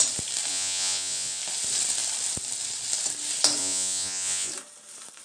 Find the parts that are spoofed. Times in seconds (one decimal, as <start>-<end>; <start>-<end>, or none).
0.5-1.4; 3.6-4.5